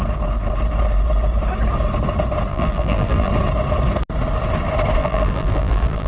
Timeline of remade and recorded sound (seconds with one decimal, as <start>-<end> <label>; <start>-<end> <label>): 0.0-2.5 recorded; 2.5-3.3 remade; 3.3-5.0 recorded; 5.0-6.1 remade